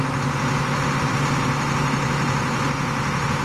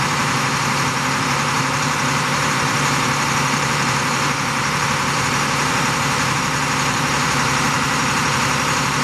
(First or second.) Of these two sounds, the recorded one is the first